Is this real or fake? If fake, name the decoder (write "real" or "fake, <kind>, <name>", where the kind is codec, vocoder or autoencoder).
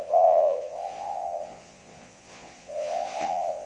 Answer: fake, vocoder, Vocos